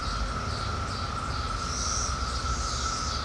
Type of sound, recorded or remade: recorded